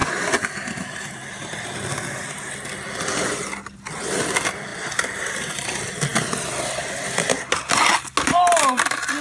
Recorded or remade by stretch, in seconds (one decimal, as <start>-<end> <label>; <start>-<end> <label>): 0.0-9.2 recorded